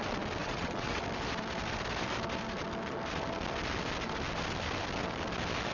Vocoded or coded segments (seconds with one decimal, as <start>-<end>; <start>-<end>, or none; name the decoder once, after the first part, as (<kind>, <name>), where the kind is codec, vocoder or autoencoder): 0.4-1.0 (vocoder, WaveNeXt)